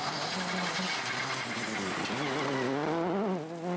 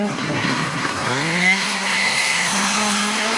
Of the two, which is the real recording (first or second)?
first